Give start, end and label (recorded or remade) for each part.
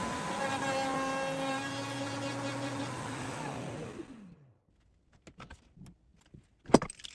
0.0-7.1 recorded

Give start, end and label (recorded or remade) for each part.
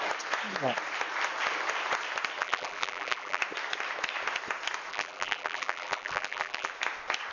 0.0-2.4 recorded; 2.4-3.4 remade; 3.4-4.9 recorded; 4.9-6.7 remade; 6.7-7.3 recorded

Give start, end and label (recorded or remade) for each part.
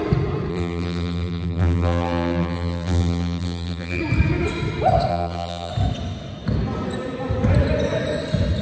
0.0-0.5 recorded; 0.5-4.0 remade; 4.0-5.1 recorded; 5.1-5.7 remade; 5.7-8.6 recorded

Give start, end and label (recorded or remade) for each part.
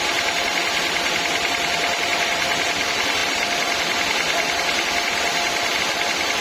0.0-6.4 recorded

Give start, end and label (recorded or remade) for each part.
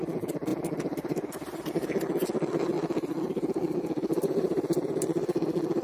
0.0-4.1 recorded; 4.1-4.9 remade; 4.9-5.8 recorded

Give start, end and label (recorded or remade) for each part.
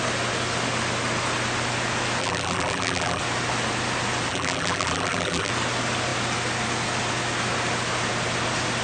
0.0-2.2 recorded; 2.2-3.2 remade; 3.2-4.3 recorded; 4.3-5.5 remade; 5.5-8.8 recorded